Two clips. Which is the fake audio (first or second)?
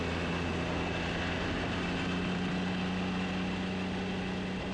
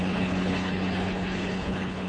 second